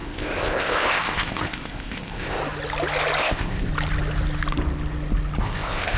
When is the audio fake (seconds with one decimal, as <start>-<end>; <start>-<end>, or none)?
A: 0.0-2.4; 3.2-3.7; 5.4-6.0